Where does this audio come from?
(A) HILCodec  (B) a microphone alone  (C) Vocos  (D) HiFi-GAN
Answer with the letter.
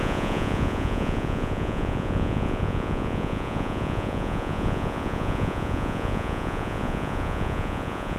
C